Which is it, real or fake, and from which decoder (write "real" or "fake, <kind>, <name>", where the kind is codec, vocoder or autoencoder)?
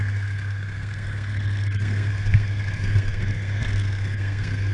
fake, codec, SNAC